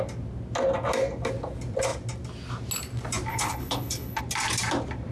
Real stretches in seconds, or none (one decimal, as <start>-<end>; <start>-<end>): 0.0-3.3; 4.2-5.1